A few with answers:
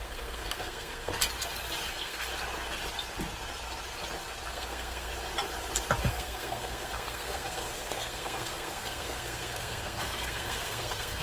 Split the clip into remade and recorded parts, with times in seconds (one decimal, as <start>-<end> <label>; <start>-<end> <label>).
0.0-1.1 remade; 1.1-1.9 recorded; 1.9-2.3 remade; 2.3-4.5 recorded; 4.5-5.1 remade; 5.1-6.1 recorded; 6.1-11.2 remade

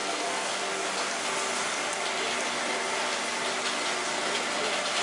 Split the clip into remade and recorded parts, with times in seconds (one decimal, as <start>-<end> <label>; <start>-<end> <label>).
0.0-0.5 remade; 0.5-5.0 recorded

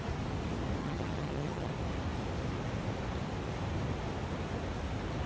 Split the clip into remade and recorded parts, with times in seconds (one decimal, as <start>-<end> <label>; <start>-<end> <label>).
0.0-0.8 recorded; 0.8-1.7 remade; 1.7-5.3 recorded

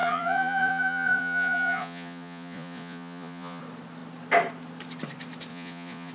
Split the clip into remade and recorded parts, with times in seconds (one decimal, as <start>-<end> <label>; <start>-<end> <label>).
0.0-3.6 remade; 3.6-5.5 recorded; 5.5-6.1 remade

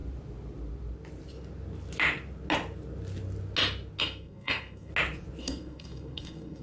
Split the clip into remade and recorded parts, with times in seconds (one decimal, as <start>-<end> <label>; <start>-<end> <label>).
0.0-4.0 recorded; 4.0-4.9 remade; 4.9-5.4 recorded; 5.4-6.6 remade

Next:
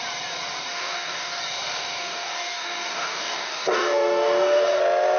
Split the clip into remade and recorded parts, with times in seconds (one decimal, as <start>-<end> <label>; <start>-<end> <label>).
0.0-0.7 recorded; 0.7-1.4 remade; 1.4-2.0 recorded; 2.0-4.8 remade; 4.8-5.2 recorded

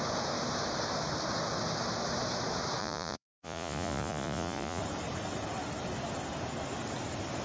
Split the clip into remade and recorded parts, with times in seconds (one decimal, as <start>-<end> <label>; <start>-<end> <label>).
0.0-2.8 recorded; 2.8-4.8 remade; 4.8-7.4 recorded